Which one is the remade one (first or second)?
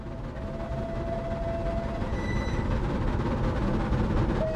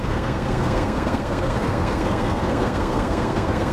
second